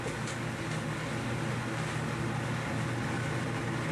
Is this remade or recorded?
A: recorded